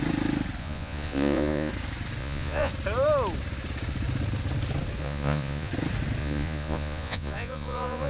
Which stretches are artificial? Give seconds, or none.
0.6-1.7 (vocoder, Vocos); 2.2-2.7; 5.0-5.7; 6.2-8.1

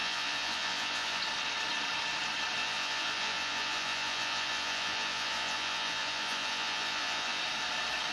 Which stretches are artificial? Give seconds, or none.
0.0-1.2 (vocoder, Vocos); 2.6-7.4

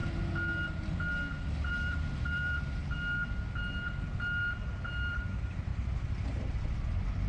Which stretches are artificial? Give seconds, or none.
1.7-2.8 (vocoder, BigVGAN v2); 5.1-5.7

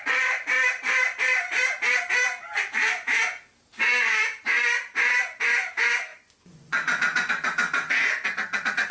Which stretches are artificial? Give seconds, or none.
6.1-7.3 (vocoder, Vocos)

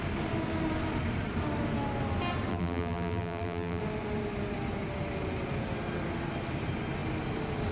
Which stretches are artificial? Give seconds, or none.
2.5-3.8 (vocoder, BigVGAN v2)

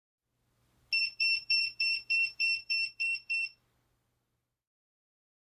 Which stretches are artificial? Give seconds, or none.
1.0-5.5 (vocoder, BigVGAN v2)

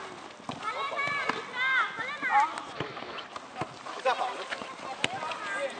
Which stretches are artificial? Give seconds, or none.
none

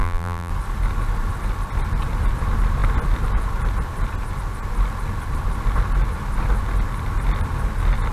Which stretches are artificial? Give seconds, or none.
0.0-0.5 (vocoder, BigVGAN v2)